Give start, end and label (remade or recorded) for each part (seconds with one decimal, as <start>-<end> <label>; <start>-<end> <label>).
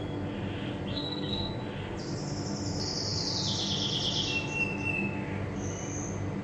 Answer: 0.0-0.9 recorded; 0.9-1.5 remade; 1.5-6.4 recorded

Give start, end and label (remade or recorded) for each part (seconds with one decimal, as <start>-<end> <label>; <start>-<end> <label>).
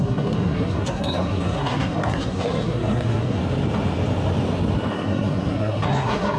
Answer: 0.0-3.4 remade; 3.4-4.9 recorded; 4.9-6.4 remade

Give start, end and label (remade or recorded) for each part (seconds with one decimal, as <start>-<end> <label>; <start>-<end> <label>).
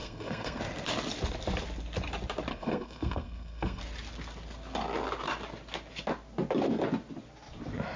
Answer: 0.0-0.6 remade; 0.6-2.5 recorded; 2.5-3.8 remade; 3.8-8.0 recorded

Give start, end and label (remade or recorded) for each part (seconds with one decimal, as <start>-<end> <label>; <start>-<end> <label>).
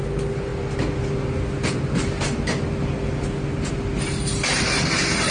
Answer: 0.0-5.3 recorded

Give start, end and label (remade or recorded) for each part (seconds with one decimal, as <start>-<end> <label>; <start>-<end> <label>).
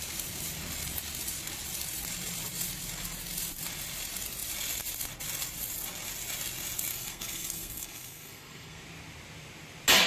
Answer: 0.0-6.9 recorded; 6.9-8.8 remade; 8.8-10.1 recorded